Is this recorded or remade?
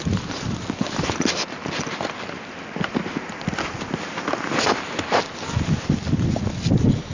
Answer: recorded